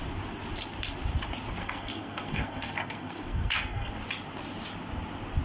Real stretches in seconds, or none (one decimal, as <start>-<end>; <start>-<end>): 0.0-1.6; 3.9-5.4